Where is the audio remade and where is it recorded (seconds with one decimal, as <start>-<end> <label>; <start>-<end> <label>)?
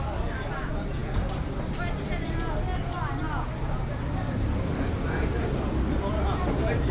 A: 0.0-6.9 recorded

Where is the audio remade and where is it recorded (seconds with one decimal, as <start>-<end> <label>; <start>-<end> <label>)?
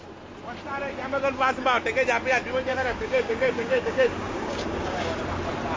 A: 0.0-2.7 recorded; 2.7-5.2 remade; 5.2-5.8 recorded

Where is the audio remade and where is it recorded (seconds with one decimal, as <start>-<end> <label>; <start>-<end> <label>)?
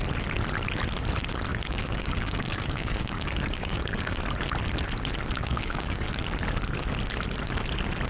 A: 0.0-1.5 recorded; 1.5-4.2 remade; 4.2-5.3 recorded; 5.3-6.1 remade; 6.1-8.1 recorded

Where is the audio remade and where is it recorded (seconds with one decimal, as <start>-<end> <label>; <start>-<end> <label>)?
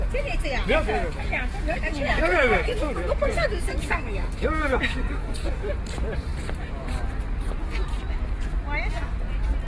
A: 0.0-1.1 recorded; 1.1-5.7 remade; 5.7-9.7 recorded